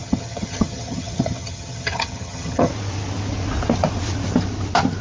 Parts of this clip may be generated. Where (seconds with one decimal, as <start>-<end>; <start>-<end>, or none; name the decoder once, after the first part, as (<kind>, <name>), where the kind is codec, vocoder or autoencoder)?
0.0-2.7 (vocoder, HiFi-GAN)